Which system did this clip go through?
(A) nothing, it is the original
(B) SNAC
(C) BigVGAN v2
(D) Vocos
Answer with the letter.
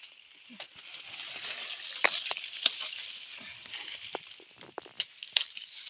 A